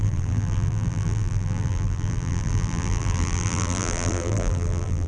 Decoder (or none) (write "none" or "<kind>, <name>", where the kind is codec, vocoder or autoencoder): vocoder, BigVGAN v2